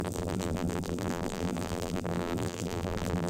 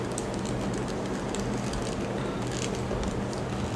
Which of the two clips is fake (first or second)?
first